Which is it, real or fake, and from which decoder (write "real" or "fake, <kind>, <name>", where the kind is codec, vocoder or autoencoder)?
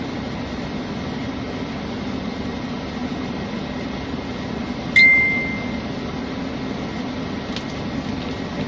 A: real